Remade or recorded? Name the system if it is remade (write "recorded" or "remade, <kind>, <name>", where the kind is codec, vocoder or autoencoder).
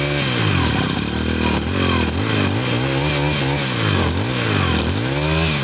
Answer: recorded